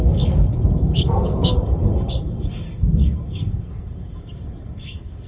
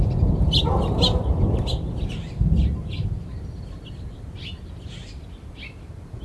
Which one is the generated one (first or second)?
first